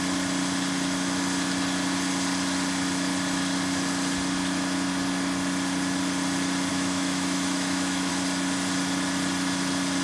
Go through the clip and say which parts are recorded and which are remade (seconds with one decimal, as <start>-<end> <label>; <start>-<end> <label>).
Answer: 0.0-6.7 recorded; 6.7-8.1 remade; 8.1-10.0 recorded